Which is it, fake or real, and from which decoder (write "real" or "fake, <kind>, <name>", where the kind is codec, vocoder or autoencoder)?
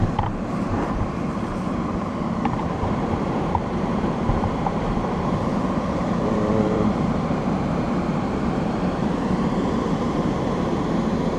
fake, vocoder, BigVGAN v2